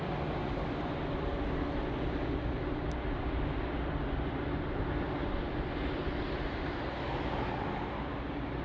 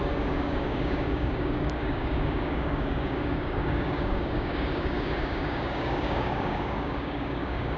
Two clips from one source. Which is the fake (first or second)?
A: second